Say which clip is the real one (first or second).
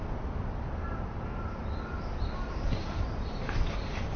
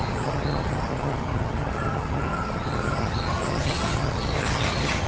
first